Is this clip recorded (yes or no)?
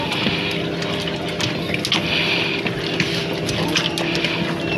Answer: yes